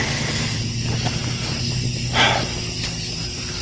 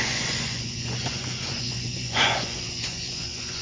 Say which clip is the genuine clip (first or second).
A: first